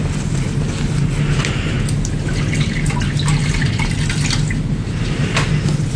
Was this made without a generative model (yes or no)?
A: yes